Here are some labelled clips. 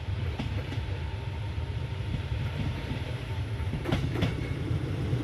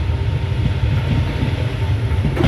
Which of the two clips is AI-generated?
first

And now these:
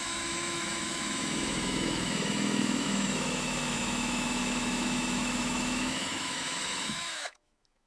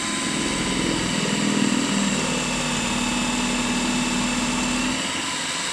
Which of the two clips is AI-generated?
first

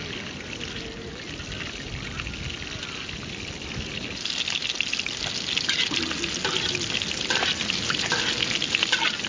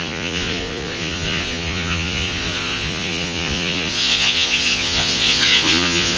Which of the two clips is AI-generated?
second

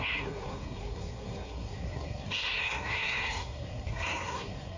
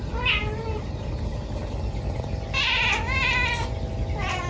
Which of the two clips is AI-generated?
first